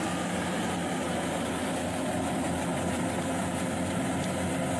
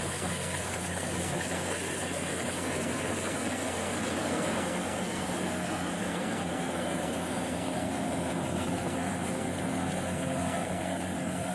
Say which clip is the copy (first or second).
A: second